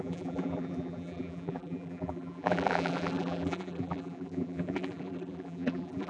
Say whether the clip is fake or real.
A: fake